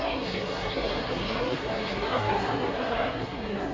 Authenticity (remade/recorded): remade